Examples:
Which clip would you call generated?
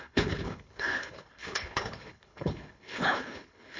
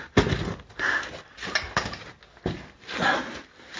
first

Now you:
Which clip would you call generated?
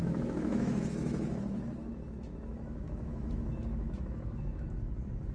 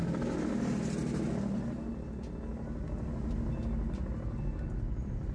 first